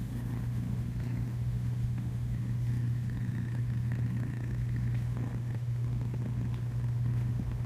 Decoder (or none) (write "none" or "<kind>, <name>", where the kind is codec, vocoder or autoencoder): autoencoder, DAC-VAE